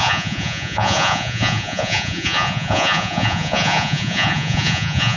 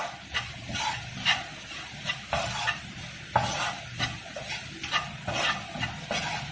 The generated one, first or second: first